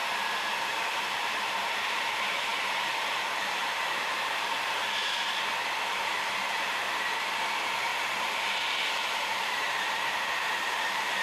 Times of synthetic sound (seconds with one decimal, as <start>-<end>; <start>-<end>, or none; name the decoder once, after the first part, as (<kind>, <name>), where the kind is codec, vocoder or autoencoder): 0.0-7.9 (vocoder, BigVGAN v2); 9.1-11.2